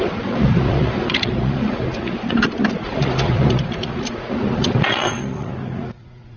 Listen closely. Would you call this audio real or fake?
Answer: fake